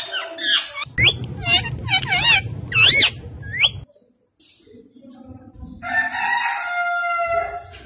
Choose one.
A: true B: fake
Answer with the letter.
A